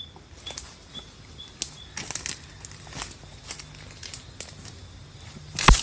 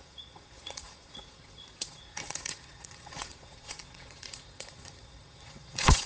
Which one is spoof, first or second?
second